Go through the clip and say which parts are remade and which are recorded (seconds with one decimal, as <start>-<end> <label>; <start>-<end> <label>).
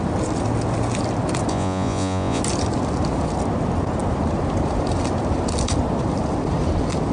0.0-1.5 recorded; 1.5-2.4 remade; 2.4-7.1 recorded